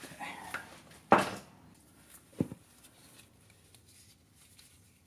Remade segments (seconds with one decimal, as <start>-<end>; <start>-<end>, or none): none